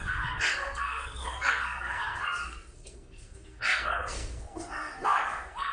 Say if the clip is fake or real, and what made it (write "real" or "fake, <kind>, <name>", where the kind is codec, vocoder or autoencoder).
fake, codec, SNAC